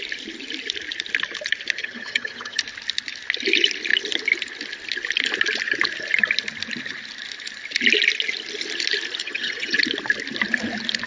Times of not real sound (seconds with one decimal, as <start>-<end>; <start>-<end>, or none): 1.8-2.6; 9.2-9.8